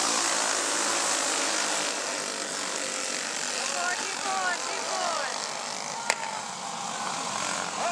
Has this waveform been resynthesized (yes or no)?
no